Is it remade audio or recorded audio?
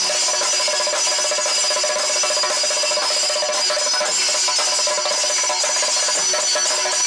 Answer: recorded